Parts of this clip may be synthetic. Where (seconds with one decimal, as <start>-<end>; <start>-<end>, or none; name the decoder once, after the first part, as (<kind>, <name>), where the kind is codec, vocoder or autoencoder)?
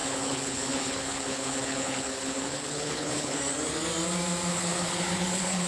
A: 0.0-3.4 (codec, HILCodec); 4.5-5.7